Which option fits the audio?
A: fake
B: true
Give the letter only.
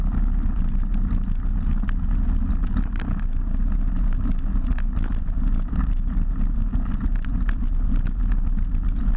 B